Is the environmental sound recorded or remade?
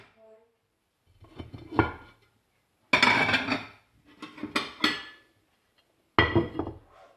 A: recorded